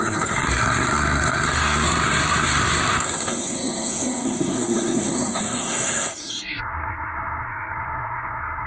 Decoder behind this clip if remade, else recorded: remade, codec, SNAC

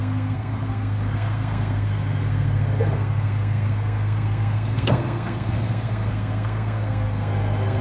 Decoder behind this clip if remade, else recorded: remade, codec, SNAC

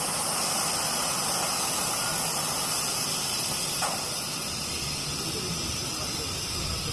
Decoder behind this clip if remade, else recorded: recorded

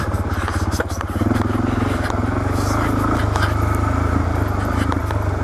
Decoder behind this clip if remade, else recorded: recorded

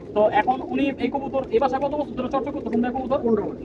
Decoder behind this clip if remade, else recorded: recorded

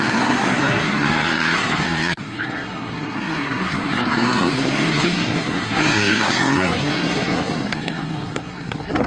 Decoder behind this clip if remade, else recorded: remade, codec, SNAC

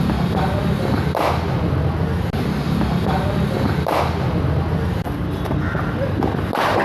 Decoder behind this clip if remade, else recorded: recorded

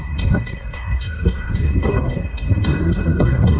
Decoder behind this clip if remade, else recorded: remade, codec, SNAC